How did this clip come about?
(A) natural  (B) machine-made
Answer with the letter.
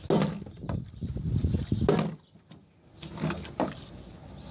A